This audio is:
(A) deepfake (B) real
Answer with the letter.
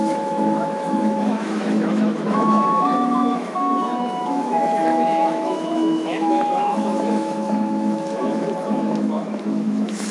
A